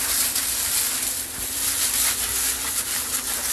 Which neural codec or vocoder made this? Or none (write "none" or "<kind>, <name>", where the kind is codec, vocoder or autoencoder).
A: vocoder, BigVGAN v2